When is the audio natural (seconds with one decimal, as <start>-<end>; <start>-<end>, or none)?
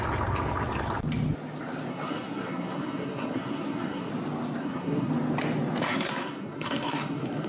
0.0-1.9; 4.1-4.6; 5.1-5.9